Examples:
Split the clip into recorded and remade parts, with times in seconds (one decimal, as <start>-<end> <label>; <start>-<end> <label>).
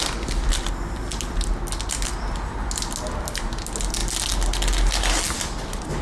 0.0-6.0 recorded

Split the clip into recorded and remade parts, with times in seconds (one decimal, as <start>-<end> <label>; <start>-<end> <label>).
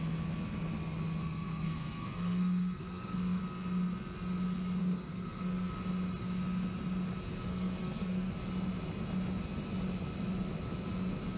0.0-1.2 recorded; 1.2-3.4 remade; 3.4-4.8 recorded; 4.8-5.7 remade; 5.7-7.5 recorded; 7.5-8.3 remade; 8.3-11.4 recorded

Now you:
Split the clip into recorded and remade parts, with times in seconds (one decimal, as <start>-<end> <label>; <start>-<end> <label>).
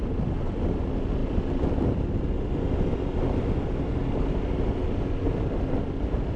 0.0-6.4 recorded